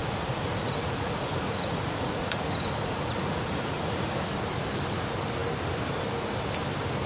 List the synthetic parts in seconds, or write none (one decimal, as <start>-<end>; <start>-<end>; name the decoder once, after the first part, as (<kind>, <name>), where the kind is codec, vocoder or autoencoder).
0.0-4.3 (vocoder, Vocos)

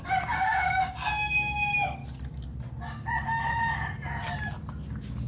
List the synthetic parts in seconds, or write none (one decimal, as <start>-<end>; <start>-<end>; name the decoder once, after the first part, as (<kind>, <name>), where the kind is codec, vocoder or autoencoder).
0.0-2.0 (codec, DAC)

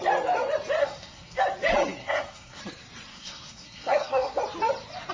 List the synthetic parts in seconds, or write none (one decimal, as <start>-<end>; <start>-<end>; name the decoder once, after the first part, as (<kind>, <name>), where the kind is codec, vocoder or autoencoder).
0.8-1.4 (codec, SNAC); 2.0-2.6; 3.1-4.4